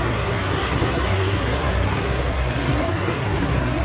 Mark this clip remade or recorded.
remade